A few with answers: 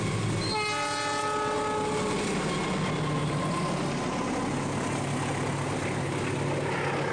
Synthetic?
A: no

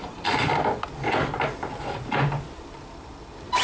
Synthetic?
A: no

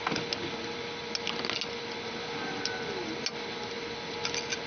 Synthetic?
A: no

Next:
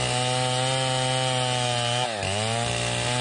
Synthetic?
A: no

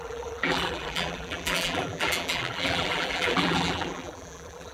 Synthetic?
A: yes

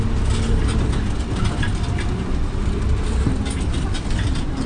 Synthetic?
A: no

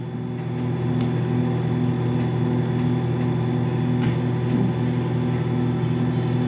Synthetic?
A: no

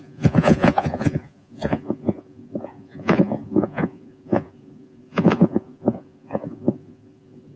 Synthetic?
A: yes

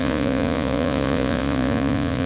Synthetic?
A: yes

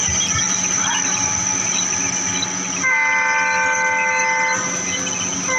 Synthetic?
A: no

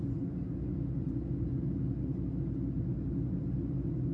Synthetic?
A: no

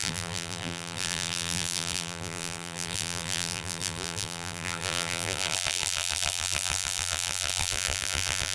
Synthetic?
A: yes